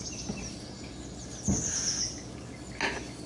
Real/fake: real